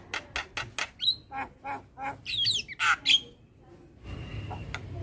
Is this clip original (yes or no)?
yes